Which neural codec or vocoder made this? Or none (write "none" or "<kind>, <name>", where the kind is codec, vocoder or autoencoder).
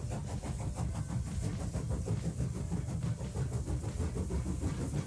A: none